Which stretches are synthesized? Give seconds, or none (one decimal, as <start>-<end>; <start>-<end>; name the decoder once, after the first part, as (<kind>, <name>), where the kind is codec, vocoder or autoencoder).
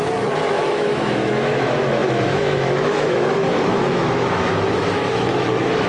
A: 0.7-5.9 (autoencoder, DAC-VAE)